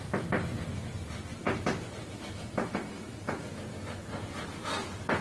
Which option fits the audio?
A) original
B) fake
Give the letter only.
A